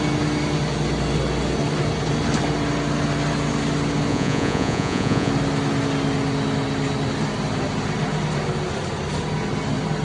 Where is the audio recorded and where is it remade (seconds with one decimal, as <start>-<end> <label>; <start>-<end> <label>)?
0.0-4.1 recorded; 4.1-5.3 remade; 5.3-10.0 recorded